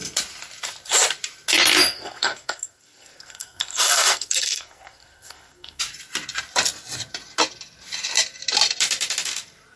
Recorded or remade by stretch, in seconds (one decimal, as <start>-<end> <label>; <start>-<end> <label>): 0.0-1.8 recorded; 1.8-5.8 remade; 5.8-9.8 recorded